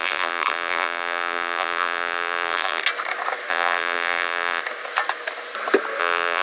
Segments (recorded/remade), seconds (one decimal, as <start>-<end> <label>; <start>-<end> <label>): 0.0-2.8 remade; 2.8-3.5 recorded; 3.5-4.6 remade; 4.6-6.0 recorded; 6.0-6.4 remade